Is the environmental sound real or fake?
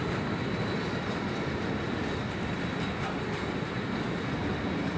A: real